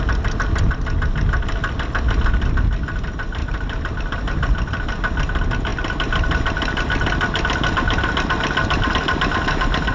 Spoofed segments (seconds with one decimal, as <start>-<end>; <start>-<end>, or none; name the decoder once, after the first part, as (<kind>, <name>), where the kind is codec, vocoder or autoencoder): 3.4-4.0 (vocoder, BigVGAN v2)